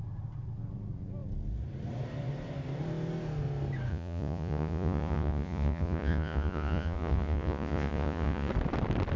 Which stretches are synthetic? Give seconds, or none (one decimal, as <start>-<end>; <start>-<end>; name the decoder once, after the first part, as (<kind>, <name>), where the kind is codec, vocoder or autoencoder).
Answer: 3.9-8.5 (vocoder, Vocos)